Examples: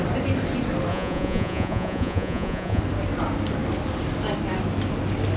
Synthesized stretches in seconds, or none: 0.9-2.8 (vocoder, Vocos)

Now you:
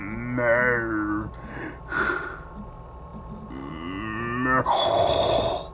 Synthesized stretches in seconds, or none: none

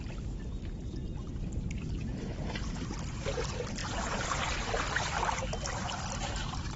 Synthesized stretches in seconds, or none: none

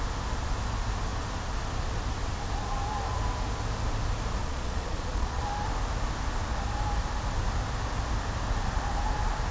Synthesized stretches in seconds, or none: 4.4-5.4 (vocoder, Vocos)

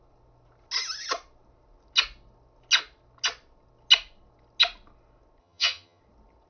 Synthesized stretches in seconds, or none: 5.4-6.0 (vocoder, HiFi-GAN)

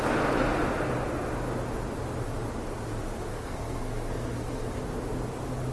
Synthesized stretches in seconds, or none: 3.3-4.8 (codec, SNAC)

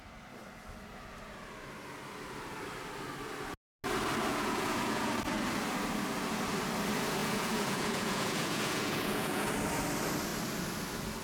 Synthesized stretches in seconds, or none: 4.3-5.1 (vocoder, Vocos); 7.2-9.5

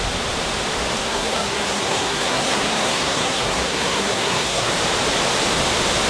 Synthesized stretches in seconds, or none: 1.0-4.7 (codec, SNAC)